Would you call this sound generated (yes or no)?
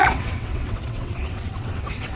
yes